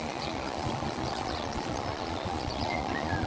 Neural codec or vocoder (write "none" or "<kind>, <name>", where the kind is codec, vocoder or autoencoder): vocoder, Vocos